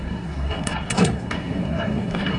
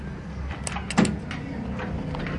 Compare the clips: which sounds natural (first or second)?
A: second